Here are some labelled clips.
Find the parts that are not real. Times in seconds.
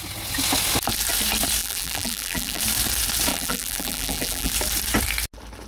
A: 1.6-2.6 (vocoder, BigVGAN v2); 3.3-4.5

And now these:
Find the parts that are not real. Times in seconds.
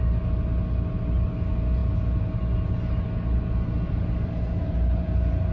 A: none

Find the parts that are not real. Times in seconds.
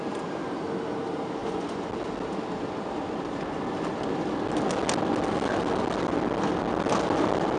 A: 1.4-1.9 (vocoder, Vocos)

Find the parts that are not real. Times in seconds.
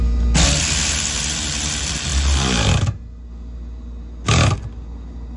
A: none